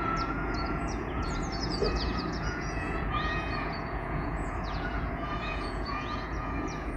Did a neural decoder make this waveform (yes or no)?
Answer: yes